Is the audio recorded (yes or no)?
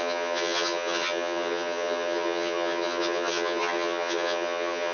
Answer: no